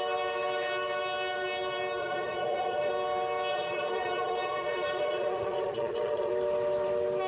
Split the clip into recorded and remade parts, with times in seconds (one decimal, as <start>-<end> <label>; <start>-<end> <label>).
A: 0.0-2.0 recorded; 2.0-2.9 remade; 2.9-3.5 recorded; 3.5-6.3 remade; 6.3-7.3 recorded